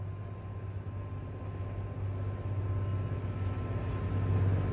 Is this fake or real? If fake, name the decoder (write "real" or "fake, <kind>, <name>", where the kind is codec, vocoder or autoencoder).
real